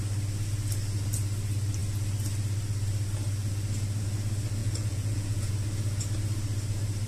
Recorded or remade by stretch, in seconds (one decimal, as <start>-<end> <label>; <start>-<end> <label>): 0.0-4.6 recorded; 4.6-5.5 remade; 5.5-7.1 recorded